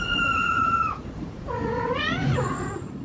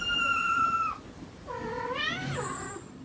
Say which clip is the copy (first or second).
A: first